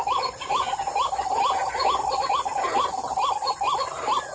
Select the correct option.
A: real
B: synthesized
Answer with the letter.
A